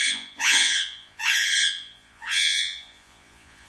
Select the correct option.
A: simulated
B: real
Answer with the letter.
A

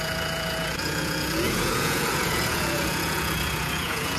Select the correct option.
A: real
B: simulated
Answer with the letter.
B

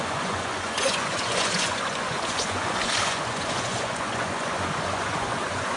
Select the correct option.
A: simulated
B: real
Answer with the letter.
A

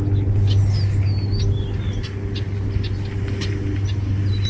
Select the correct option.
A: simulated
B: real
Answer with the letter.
B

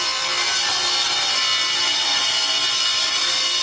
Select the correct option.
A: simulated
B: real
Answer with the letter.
B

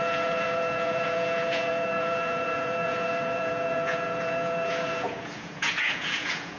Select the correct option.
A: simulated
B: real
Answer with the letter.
A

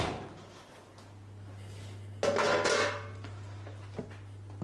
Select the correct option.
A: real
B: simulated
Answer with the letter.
A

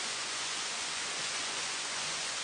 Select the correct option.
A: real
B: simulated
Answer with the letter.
B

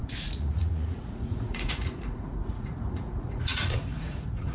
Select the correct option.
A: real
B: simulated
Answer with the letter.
B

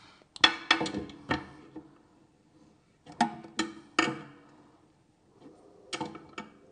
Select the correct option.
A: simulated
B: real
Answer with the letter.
B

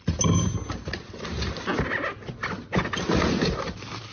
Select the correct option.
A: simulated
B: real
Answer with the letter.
B